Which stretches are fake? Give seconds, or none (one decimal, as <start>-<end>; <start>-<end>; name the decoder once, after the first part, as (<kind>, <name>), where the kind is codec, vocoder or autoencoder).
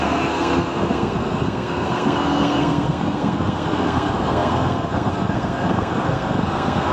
0.0-6.9 (codec, SNAC)